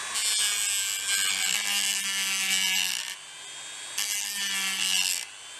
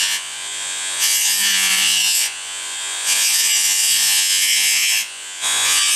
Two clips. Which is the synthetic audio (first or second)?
second